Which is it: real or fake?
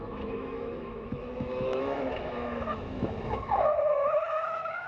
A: fake